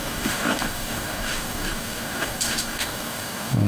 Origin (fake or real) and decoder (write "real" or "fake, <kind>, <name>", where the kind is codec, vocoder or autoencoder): fake, codec, DAC